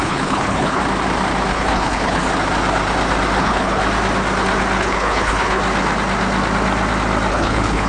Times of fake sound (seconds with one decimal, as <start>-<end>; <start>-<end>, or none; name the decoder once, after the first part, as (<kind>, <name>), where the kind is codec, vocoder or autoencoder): 0.0-0.8 (codec, HILCodec); 1.5-2.2; 3.4-3.8; 4.8-5.6; 7.3-7.9